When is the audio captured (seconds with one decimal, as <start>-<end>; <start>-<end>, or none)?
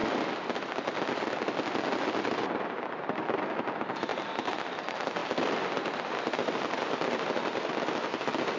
0.0-8.6